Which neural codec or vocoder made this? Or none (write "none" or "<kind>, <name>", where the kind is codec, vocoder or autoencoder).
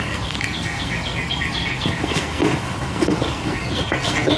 codec, SNAC